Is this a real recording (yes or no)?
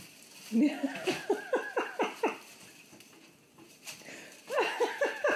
no